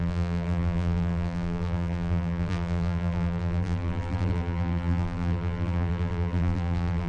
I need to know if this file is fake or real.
fake